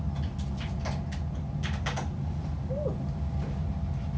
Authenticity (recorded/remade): recorded